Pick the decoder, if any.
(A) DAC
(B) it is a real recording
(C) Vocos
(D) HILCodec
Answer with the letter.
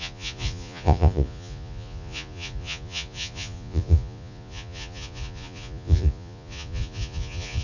C